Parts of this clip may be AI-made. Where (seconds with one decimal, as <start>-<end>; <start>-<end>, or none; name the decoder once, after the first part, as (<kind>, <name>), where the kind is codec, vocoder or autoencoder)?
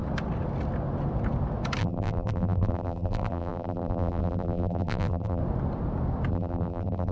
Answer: 1.8-5.4 (vocoder, BigVGAN v2); 6.3-7.1